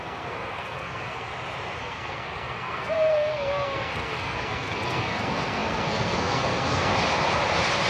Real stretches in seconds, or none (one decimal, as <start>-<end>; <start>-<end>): 1.3-1.8; 6.9-7.9